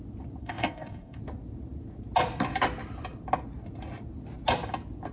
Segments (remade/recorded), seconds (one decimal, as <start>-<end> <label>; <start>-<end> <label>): 0.0-0.4 recorded; 0.4-1.2 remade; 1.2-5.1 recorded